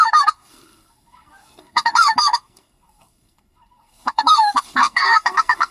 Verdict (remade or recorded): remade